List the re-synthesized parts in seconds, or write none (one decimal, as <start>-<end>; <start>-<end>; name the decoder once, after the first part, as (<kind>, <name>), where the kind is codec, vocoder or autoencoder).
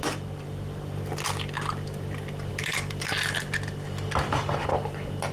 2.5-3.1 (vocoder, BigVGAN v2)